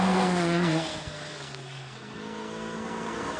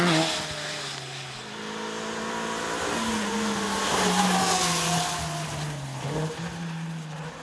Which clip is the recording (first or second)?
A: second